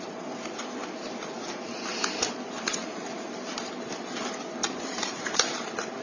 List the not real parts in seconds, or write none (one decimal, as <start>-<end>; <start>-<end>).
2.8-3.6; 4.6-5.5